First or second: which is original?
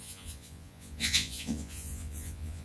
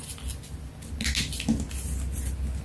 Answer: second